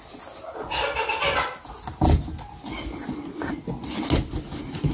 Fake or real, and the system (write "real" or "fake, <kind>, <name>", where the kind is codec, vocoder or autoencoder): real